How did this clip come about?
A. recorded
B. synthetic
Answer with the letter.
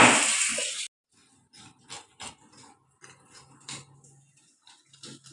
A